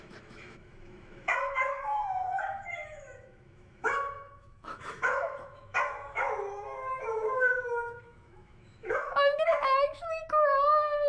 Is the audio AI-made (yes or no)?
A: yes